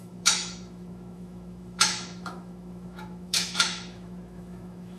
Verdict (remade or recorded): remade